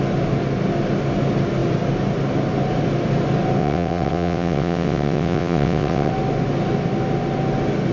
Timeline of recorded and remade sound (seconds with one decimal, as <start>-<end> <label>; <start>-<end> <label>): 0.0-3.6 recorded; 3.6-6.1 remade; 6.1-7.9 recorded

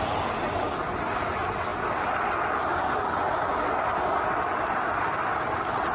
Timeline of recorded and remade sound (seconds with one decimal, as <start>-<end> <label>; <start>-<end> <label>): 0.0-5.9 recorded

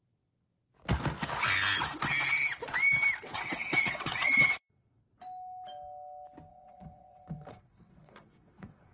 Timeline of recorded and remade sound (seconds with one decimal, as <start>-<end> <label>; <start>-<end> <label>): 0.0-0.6 remade; 0.6-3.2 recorded; 3.2-5.0 remade; 5.0-6.5 recorded; 6.5-8.9 remade

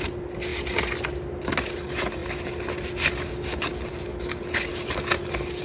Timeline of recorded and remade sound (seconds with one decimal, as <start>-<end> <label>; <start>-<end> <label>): 0.0-5.6 recorded

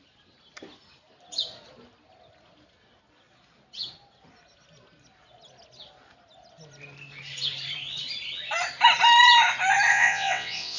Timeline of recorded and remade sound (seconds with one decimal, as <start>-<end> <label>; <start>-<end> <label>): 0.0-9.9 recorded; 9.9-10.8 remade

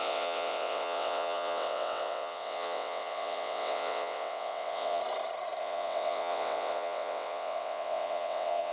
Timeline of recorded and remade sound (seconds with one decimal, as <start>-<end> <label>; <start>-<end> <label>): 0.0-5.0 remade; 5.0-5.6 recorded; 5.6-8.7 remade